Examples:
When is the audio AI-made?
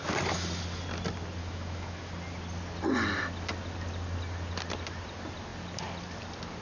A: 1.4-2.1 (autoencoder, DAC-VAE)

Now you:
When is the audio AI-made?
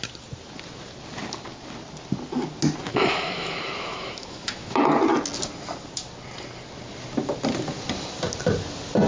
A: 2.9-4.8 (autoencoder, DAC-VAE)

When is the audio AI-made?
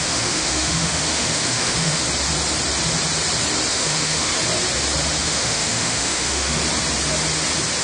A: 0.0-2.0 (autoencoder, DAC-VAE); 3.7-4.3; 5.2-6.6